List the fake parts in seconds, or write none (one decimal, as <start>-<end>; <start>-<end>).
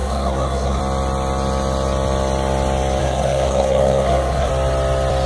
0.0-0.8; 3.0-4.5